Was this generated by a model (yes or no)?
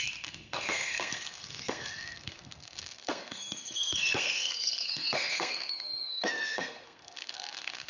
yes